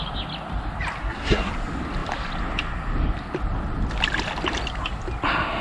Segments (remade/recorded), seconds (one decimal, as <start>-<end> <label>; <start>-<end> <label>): 0.0-1.0 recorded; 1.0-1.5 remade; 1.5-5.6 recorded